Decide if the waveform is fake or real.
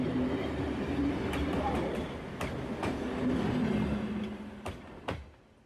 real